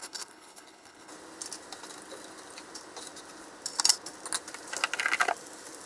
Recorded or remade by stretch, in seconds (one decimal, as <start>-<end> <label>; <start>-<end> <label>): 0.0-1.1 remade; 1.1-5.9 recorded